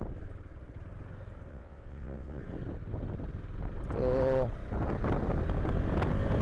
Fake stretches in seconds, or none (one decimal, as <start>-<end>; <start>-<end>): 1.5-2.4